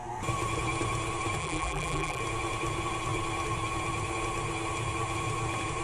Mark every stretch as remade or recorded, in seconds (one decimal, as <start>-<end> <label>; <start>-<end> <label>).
0.0-1.4 recorded; 1.4-2.2 remade; 2.2-5.8 recorded